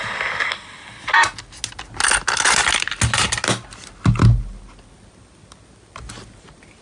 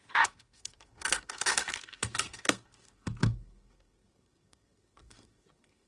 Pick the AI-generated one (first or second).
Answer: second